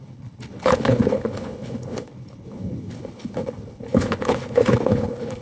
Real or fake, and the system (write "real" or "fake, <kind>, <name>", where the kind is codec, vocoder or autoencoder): fake, codec, HILCodec